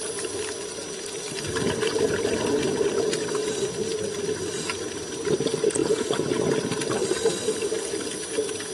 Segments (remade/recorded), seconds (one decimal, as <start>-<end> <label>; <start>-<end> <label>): 0.0-5.8 recorded; 5.8-6.4 remade; 6.4-8.7 recorded